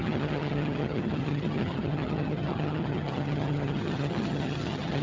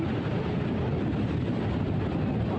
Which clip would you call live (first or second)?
second